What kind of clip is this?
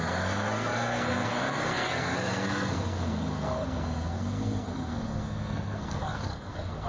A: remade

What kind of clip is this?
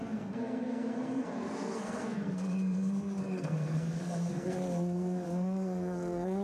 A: remade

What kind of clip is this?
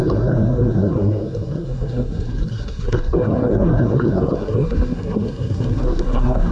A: remade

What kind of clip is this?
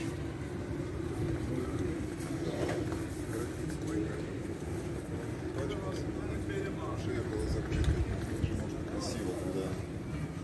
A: recorded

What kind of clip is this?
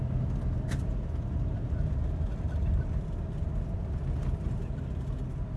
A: recorded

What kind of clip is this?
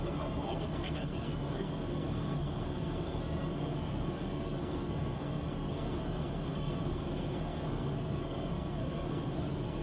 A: remade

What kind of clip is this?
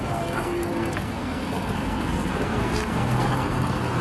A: remade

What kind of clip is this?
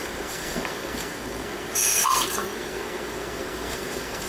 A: remade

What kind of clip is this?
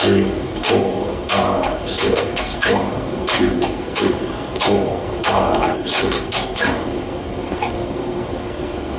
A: remade